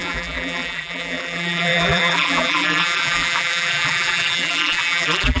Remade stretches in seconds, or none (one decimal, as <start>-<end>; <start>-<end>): 0.0-5.4